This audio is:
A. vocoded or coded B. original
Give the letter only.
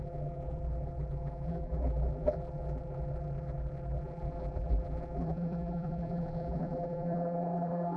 A